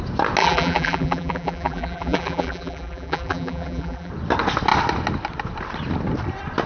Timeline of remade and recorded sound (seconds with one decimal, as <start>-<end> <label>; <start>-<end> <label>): 0.0-0.4 recorded; 0.4-4.1 remade; 4.1-6.7 recorded